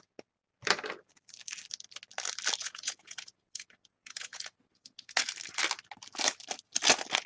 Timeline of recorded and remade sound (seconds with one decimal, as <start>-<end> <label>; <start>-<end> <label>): 0.0-2.6 recorded; 2.6-5.2 remade; 5.2-7.3 recorded